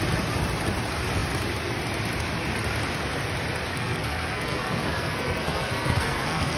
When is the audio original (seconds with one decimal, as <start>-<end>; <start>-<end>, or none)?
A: 0.0-3.7